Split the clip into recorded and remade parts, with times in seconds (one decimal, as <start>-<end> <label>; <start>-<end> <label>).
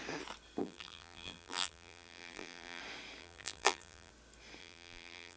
0.0-0.6 recorded; 0.6-2.8 remade; 2.8-3.2 recorded; 3.2-4.1 remade; 4.1-4.6 recorded; 4.6-5.4 remade